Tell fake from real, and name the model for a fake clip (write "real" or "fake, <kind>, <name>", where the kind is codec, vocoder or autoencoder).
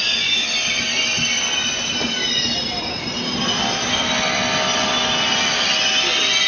real